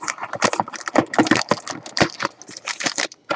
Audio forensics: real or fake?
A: real